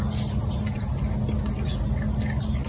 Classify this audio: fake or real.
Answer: real